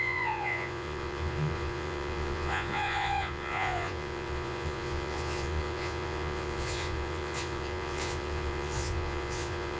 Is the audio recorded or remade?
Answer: remade